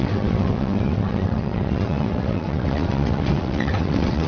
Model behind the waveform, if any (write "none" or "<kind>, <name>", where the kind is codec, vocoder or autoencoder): vocoder, WaveNeXt